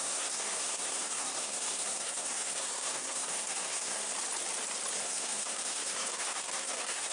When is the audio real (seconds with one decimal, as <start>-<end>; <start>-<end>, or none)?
4.1-5.0